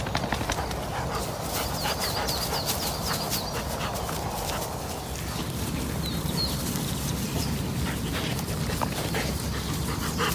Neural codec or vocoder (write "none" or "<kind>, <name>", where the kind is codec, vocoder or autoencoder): none